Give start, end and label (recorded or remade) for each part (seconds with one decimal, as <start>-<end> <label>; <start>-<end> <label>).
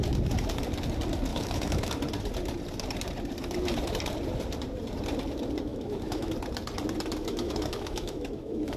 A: 0.0-1.3 recorded; 1.3-1.9 remade; 1.9-5.7 recorded; 5.7-6.3 remade; 6.3-7.2 recorded; 7.2-8.8 remade